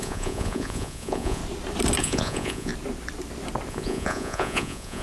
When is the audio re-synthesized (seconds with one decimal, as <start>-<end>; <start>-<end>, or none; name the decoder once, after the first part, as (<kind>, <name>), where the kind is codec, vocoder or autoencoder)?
0.0-1.4 (vocoder, Vocos); 2.0-2.7; 3.7-5.0